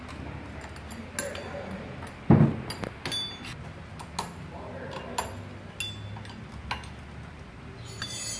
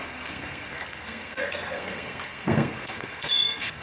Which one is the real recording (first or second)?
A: first